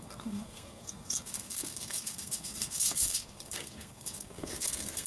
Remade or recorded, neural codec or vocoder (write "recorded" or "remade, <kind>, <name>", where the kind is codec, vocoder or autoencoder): remade, codec, SNAC